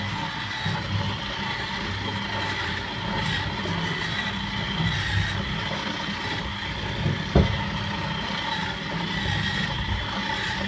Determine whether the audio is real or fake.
real